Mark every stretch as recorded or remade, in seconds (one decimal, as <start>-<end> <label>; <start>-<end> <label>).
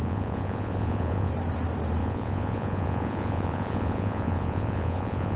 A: 0.0-1.3 remade; 1.3-2.0 recorded; 2.0-5.4 remade